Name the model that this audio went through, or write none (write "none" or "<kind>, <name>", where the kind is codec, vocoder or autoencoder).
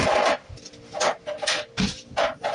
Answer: none